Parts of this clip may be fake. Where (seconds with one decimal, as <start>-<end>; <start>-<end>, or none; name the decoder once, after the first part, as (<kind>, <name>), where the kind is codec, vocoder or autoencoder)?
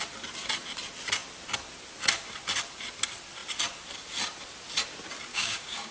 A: 5.3-5.9 (codec, DAC)